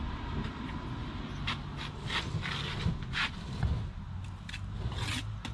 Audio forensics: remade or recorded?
recorded